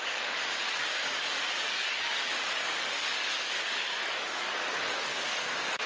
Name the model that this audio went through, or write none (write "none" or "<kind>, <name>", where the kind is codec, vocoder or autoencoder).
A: codec, DAC